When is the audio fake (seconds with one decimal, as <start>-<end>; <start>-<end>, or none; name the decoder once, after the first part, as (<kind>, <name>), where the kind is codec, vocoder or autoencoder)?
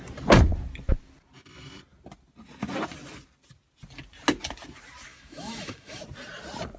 5.1-6.0 (autoencoder, DAC-VAE)